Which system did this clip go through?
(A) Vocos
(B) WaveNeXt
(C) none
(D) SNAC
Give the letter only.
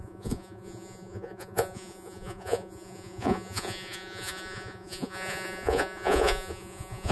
A